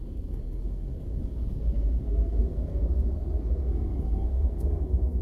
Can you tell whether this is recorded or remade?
remade